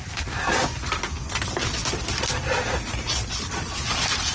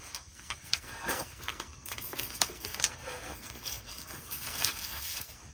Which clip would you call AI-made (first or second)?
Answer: second